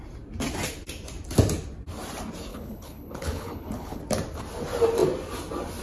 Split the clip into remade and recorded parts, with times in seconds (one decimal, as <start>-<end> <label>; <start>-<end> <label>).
0.0-2.5 recorded; 2.5-4.0 remade; 4.0-5.8 recorded